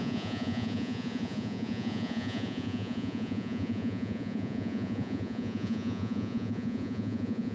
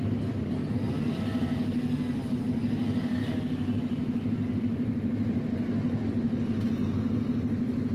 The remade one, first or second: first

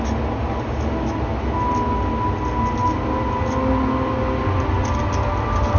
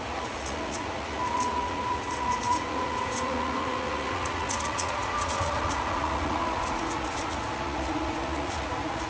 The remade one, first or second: second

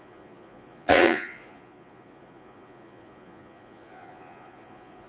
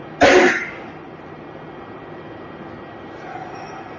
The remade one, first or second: first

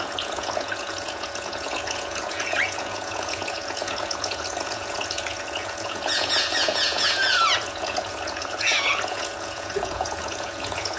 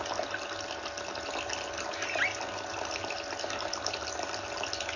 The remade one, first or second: first